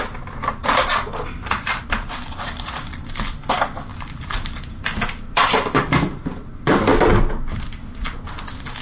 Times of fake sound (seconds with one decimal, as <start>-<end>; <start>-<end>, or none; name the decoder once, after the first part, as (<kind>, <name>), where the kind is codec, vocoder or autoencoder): 0.6-3.0 (vocoder, BigVGAN v2); 3.9-5.5